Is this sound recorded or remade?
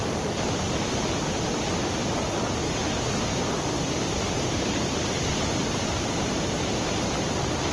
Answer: recorded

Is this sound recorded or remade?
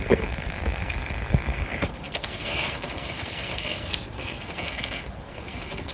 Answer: remade